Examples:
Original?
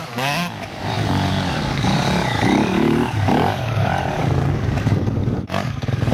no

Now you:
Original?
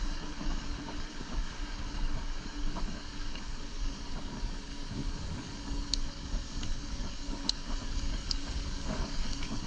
no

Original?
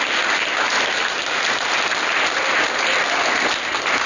yes